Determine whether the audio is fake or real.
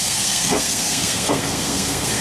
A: fake